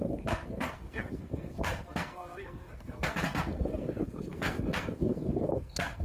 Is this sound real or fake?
fake